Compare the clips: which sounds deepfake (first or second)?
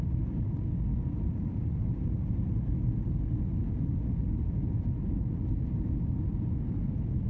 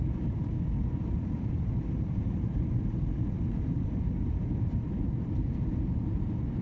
second